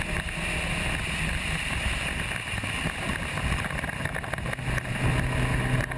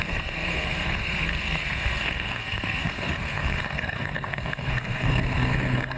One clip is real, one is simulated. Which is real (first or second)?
first